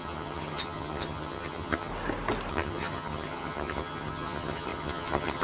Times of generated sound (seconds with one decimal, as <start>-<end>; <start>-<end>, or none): 0.0-1.9; 2.5-5.4